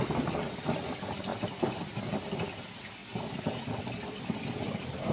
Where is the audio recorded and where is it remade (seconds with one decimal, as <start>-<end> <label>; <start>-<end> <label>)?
0.0-5.1 recorded